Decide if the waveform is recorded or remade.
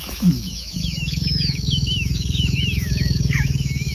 remade